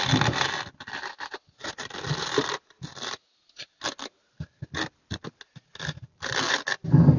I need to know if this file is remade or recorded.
recorded